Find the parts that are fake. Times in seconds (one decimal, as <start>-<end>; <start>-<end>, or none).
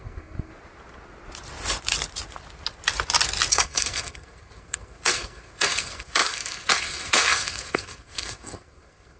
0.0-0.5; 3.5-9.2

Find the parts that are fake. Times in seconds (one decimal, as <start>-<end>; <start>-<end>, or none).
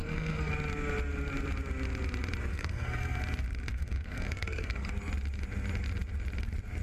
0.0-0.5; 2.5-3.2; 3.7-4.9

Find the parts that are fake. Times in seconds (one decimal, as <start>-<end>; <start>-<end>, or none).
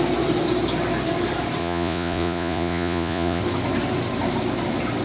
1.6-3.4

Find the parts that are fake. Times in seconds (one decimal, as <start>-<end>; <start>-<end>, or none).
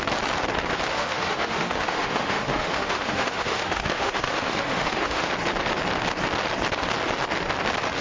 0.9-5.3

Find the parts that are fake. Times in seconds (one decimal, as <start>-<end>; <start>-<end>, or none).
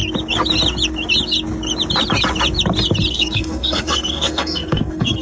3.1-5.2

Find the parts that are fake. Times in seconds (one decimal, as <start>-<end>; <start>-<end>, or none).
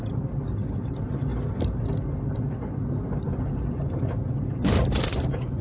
none